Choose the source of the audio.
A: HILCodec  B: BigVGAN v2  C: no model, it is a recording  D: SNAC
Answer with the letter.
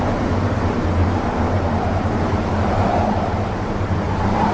B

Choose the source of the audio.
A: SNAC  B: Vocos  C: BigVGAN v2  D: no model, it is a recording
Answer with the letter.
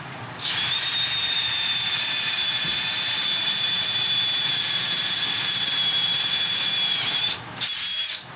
C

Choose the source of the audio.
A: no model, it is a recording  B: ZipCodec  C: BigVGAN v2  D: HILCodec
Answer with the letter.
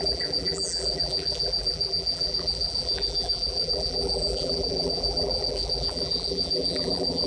C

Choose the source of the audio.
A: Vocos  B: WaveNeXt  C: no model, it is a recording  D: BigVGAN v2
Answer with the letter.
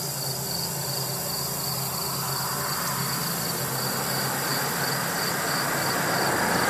C